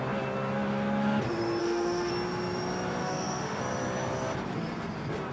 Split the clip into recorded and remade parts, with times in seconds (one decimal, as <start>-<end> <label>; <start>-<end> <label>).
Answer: 0.0-1.6 recorded; 1.6-2.1 remade; 2.1-3.0 recorded; 3.0-3.6 remade; 3.6-5.3 recorded